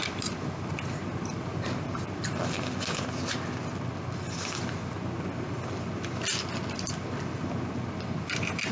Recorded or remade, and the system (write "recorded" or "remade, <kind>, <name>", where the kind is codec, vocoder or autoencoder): recorded